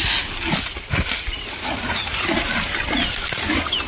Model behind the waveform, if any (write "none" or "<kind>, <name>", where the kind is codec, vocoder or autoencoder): vocoder, BigVGAN v2